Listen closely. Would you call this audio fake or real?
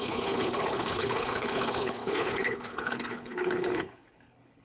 fake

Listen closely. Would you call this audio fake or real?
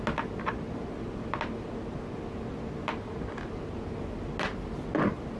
real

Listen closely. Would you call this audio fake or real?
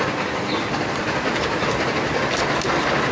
real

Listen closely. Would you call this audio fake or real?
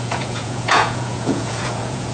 fake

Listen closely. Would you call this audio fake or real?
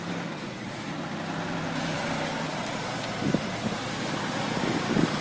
fake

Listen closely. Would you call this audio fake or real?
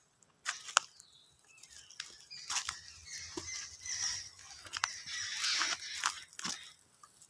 real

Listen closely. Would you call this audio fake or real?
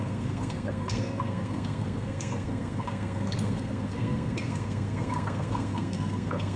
fake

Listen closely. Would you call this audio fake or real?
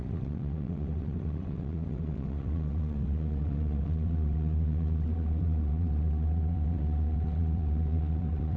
fake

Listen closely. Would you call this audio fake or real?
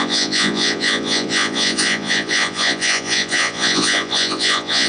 fake